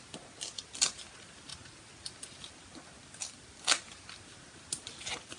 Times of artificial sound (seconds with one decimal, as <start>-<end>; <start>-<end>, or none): none